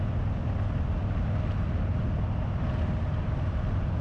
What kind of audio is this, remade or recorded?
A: recorded